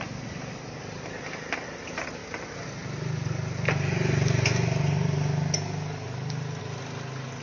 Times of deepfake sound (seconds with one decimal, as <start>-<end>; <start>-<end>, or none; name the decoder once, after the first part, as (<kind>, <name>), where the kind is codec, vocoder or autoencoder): none